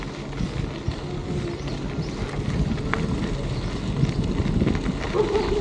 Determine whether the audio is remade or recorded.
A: recorded